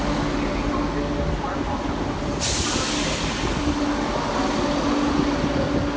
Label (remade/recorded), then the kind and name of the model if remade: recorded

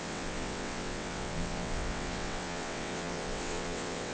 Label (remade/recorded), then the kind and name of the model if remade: remade, vocoder, WaveNeXt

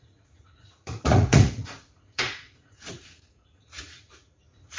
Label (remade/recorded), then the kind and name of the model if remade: remade, vocoder, Vocos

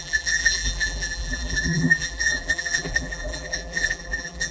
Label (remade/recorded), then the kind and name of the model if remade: remade, vocoder, BigVGAN v2